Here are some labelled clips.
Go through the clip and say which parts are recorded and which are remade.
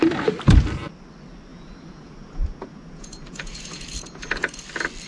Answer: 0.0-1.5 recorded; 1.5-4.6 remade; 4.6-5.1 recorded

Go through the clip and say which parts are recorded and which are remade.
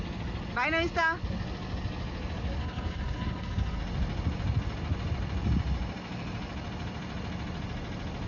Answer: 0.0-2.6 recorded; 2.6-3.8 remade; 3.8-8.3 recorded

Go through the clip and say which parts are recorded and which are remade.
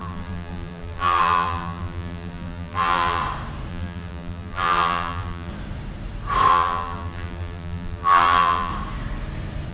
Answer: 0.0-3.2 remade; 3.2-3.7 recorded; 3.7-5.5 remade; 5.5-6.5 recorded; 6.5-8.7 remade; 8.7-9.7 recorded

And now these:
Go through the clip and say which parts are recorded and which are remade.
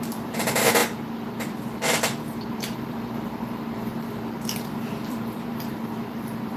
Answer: 0.0-0.8 remade; 0.8-2.5 recorded; 2.5-3.9 remade; 3.9-4.6 recorded; 4.6-6.6 remade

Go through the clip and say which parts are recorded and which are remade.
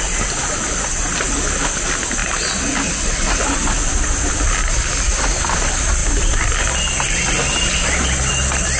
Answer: 0.0-8.8 recorded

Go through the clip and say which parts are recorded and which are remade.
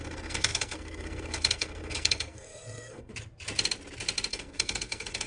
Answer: 0.0-3.1 remade; 3.1-4.3 recorded; 4.3-5.3 remade